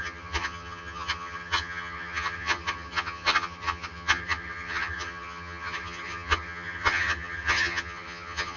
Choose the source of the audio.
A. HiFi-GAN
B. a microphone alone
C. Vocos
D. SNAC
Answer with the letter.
A